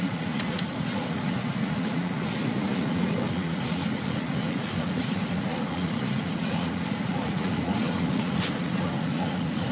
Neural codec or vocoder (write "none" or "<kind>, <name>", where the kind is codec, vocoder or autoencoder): vocoder, Vocos